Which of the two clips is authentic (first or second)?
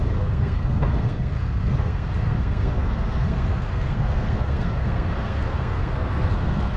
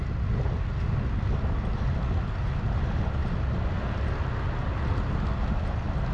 second